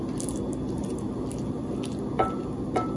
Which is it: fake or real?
real